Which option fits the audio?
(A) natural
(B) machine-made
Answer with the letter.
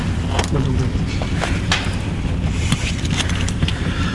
B